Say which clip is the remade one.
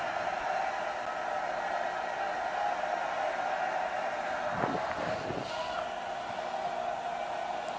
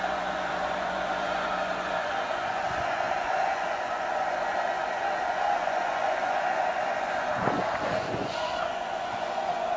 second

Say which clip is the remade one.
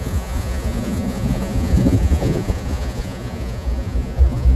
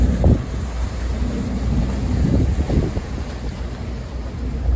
first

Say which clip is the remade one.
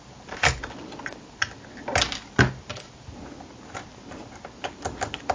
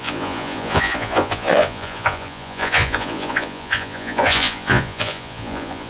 second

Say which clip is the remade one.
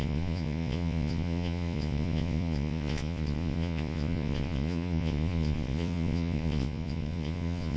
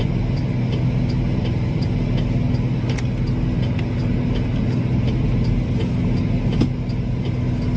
first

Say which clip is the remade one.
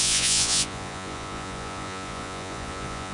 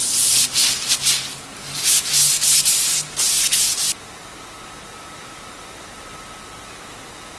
first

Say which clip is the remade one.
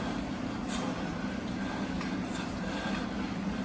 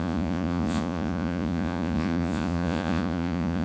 second